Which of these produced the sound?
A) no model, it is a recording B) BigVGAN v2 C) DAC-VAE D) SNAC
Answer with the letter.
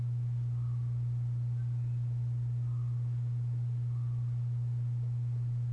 A